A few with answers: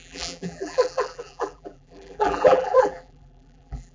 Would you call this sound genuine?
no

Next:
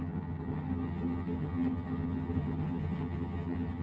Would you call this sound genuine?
no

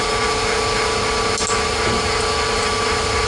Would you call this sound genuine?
yes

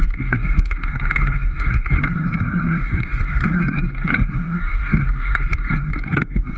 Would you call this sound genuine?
no